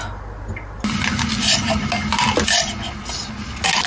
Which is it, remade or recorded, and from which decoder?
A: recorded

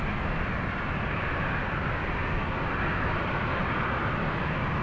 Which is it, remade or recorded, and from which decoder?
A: recorded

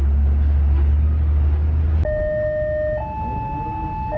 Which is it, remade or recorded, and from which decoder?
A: recorded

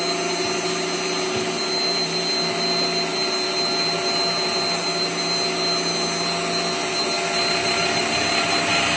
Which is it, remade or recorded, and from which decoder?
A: recorded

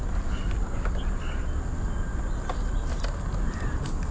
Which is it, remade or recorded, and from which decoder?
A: recorded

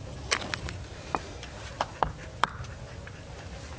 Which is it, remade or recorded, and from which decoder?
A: recorded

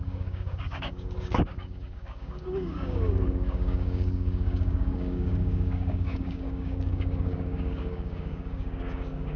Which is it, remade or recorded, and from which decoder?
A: remade, codec, DAC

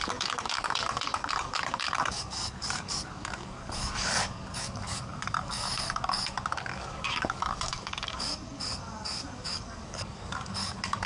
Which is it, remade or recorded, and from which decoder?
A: remade, codec, DAC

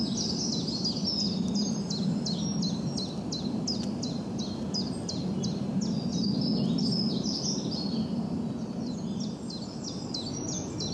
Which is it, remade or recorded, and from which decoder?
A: recorded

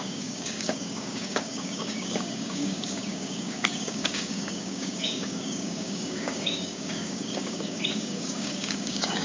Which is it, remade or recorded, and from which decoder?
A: remade, codec, DAC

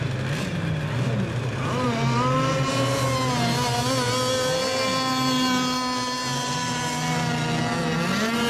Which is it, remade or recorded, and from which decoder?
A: recorded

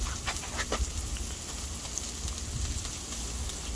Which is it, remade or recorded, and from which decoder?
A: recorded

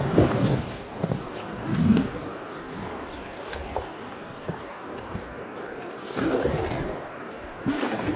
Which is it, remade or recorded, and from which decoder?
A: remade, codec, DAC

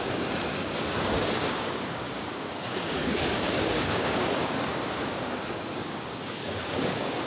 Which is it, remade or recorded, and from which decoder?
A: remade, codec, DAC